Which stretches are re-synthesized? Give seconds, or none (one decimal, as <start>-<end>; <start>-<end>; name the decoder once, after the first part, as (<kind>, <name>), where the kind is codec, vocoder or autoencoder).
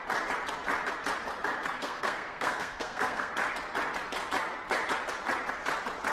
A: 1.8-3.3 (codec, SNAC)